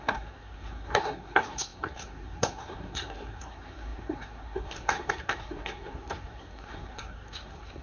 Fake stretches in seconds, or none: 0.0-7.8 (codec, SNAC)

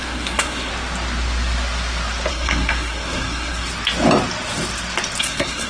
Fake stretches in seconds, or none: 0.0-0.7 (codec, SNAC); 2.3-3.7; 5.2-5.7

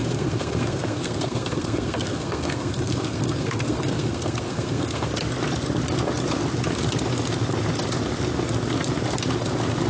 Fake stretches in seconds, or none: 0.0-5.1 (codec, SNAC)

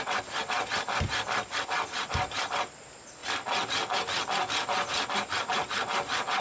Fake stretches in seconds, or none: none

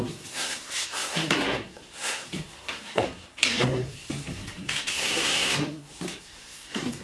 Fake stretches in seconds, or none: 0.0-7.0 (codec, SNAC)

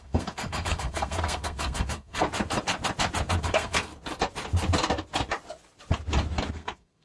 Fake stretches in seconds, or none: 0.0-2.2 (codec, SNAC); 3.4-3.9; 6.5-7.0